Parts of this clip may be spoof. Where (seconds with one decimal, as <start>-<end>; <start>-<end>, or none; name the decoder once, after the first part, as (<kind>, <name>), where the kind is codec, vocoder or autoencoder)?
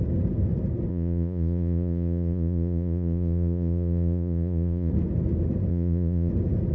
0.9-4.9 (vocoder, Vocos); 5.7-6.3